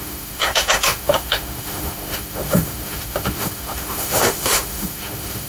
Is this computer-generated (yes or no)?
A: yes